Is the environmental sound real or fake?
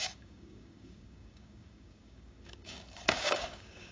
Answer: fake